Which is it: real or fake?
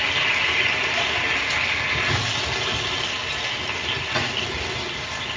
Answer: real